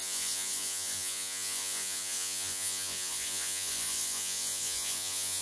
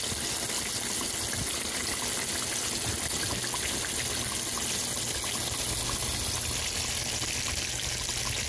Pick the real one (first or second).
second